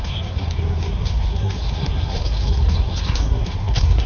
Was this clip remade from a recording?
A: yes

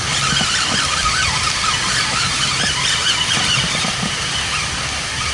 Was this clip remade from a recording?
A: no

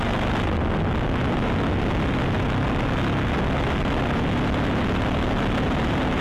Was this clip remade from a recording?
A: no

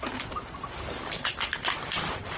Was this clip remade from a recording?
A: no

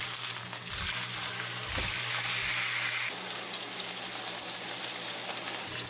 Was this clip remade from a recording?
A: no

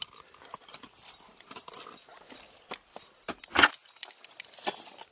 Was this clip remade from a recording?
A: yes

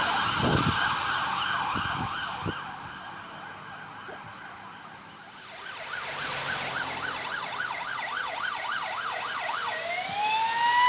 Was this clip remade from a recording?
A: no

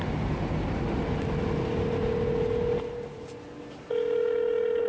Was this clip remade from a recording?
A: no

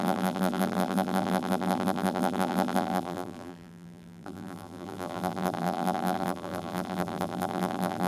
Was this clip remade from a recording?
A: yes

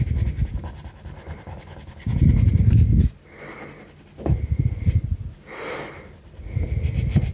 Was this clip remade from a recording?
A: no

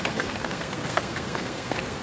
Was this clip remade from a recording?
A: yes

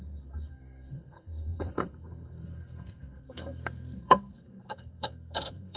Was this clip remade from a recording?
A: yes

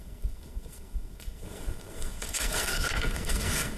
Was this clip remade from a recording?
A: yes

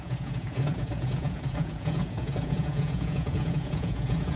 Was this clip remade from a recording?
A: yes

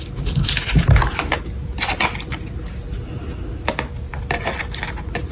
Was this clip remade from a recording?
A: no